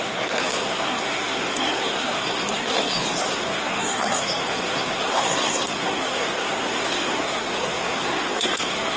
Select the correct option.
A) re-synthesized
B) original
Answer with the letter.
A